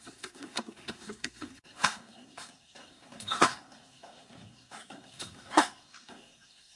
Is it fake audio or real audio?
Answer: fake